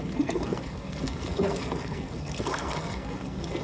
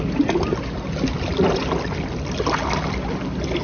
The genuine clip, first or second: second